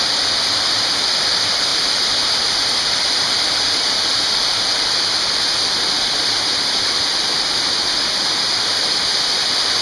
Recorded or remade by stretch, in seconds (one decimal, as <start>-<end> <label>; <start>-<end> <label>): 0.0-1.7 recorded; 1.7-4.6 remade; 4.6-9.8 recorded